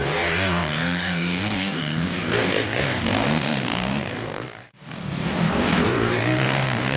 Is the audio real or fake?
fake